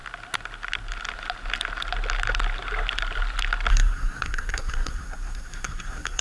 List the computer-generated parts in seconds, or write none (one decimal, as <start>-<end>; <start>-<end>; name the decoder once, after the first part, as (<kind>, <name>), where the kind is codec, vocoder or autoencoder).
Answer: 3.7-6.2 (codec, SNAC)